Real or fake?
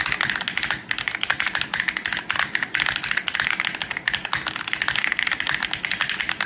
real